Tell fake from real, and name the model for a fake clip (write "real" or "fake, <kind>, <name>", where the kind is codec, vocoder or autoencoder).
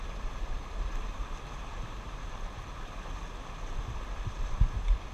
real